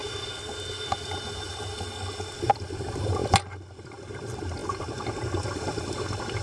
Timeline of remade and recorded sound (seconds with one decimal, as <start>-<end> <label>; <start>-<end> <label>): 0.0-2.5 recorded; 2.5-3.2 remade; 3.2-3.8 recorded; 3.8-6.4 remade